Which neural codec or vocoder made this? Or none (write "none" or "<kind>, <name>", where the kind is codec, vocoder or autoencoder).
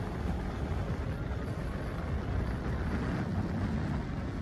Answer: none